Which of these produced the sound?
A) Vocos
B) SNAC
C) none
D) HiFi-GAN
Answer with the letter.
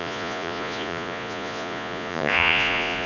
A